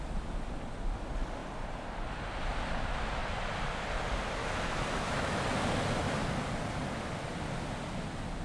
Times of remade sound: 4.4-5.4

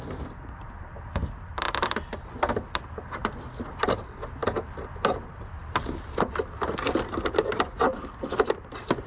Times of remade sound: none

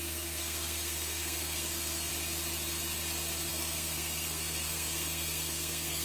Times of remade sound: 0.0-2.1; 3.5-6.0

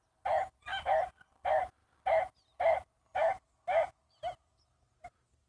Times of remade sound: none

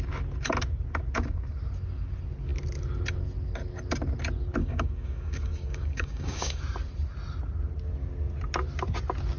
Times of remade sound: 4.6-6.6

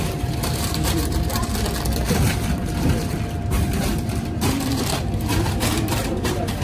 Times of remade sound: 0.0-1.5; 2.1-6.6